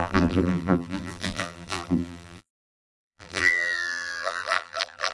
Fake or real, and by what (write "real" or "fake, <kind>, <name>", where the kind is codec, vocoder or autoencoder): fake, vocoder, BigVGAN v2